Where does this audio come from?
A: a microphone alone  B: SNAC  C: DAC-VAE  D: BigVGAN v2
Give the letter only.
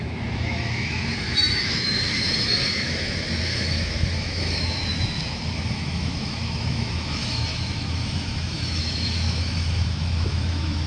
C